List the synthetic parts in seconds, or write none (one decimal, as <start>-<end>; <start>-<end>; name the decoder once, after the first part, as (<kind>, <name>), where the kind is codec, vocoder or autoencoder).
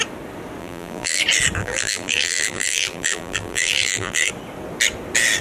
0.6-1.2 (vocoder, BigVGAN v2); 1.6-4.3